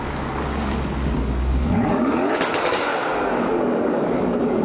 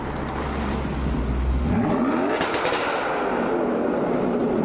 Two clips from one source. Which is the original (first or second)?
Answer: second